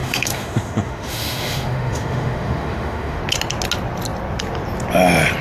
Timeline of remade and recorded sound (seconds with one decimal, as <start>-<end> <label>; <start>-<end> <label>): 0.0-3.2 remade; 3.2-5.4 recorded